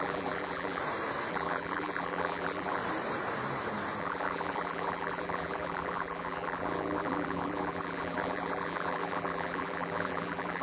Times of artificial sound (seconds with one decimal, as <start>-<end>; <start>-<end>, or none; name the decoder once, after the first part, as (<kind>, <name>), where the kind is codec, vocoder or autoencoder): 0.0-0.8 (vocoder, BigVGAN v2); 1.3-2.8; 4.0-10.6